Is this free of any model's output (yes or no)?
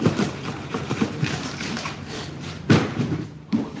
no